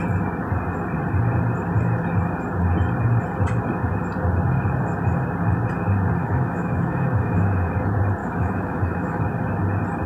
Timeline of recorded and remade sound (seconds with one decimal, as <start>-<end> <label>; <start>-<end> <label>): 0.0-6.2 recorded; 6.2-7.7 remade; 7.7-8.2 recorded; 8.2-9.2 remade; 9.2-10.1 recorded